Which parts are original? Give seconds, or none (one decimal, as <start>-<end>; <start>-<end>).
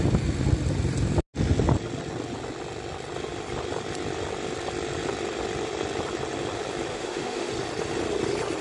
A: 0.0-6.9; 7.5-8.6